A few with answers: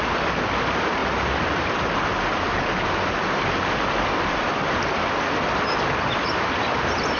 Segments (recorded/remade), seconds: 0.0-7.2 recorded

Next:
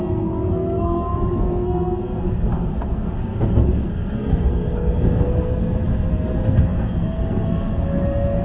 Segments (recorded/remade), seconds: 0.0-8.4 remade

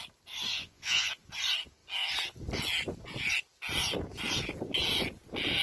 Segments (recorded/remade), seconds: 0.0-0.5 recorded; 0.5-1.1 remade; 1.1-5.6 recorded